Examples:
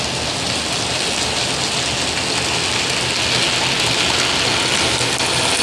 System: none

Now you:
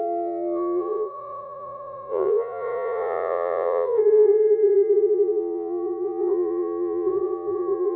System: vocoder, Vocos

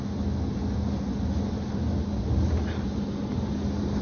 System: none